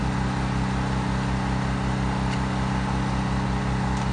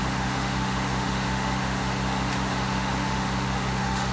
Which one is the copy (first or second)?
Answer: second